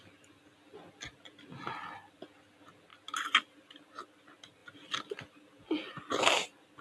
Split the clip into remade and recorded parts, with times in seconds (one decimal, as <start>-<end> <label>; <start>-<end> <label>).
0.0-6.8 recorded